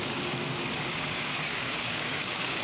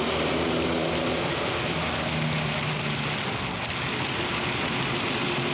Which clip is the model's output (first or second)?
first